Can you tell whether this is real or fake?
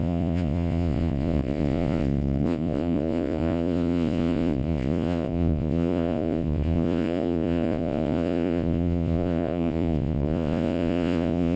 fake